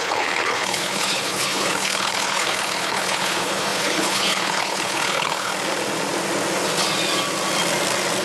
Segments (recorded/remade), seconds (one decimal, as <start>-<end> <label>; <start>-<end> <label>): 0.0-5.5 remade; 5.5-8.2 recorded